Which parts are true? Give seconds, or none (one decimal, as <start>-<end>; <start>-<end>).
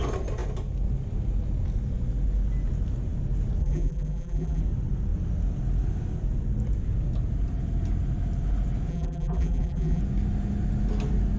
0.0-3.6; 4.6-8.9; 10.0-11.4